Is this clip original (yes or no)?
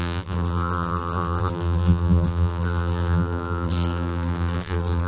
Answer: no